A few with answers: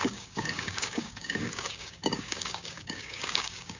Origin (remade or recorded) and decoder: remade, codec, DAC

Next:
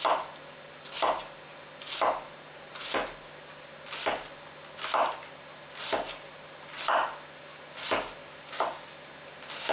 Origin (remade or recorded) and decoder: recorded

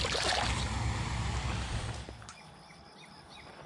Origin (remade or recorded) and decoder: recorded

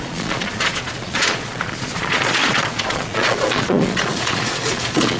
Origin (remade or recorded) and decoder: remade, vocoder, Vocos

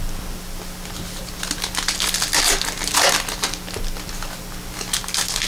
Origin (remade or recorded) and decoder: recorded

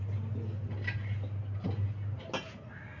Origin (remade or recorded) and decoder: recorded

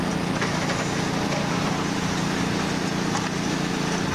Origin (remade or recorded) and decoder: recorded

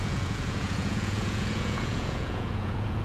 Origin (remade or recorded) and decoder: remade, vocoder, Vocos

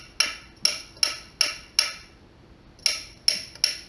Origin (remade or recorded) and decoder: recorded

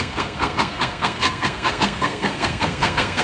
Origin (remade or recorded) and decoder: remade, codec, SNAC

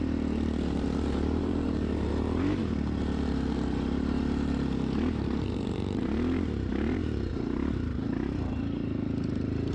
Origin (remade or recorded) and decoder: remade, vocoder, BigVGAN v2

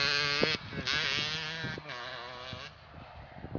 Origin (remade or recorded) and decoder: recorded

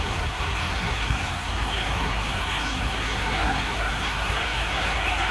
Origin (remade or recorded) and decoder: remade, codec, SNAC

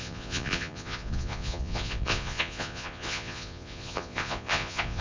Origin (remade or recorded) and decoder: remade, vocoder, Vocos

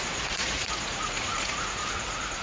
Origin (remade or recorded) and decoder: remade, vocoder, Vocos